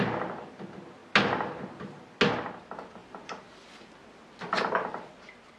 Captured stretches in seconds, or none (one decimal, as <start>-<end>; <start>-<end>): 0.0-5.6